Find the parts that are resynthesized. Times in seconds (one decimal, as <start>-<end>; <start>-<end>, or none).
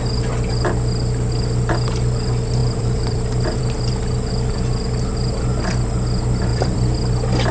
2.6-3.6; 6.5-7.1